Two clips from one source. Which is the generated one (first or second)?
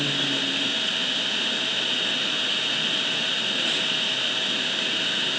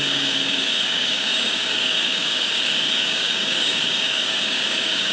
second